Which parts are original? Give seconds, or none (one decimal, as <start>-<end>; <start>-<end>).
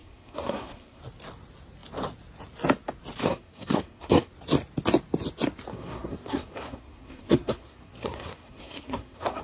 1.0-3.2; 4.3-5.7